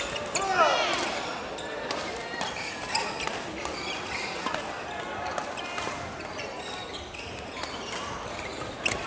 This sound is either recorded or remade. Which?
recorded